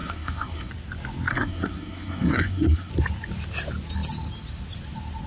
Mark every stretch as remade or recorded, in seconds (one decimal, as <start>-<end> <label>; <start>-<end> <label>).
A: 0.0-0.7 remade; 0.7-1.3 recorded; 1.3-2.9 remade; 2.9-5.3 recorded